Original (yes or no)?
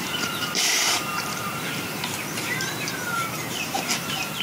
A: no